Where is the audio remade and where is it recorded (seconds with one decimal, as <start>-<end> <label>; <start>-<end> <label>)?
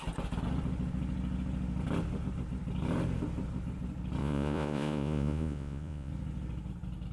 0.0-4.2 recorded; 4.2-6.1 remade; 6.1-7.1 recorded